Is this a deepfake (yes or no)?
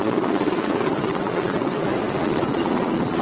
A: yes